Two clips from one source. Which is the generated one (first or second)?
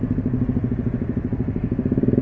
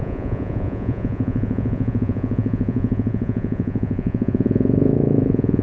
second